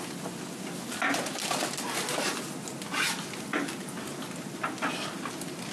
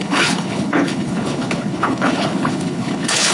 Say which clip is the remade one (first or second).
second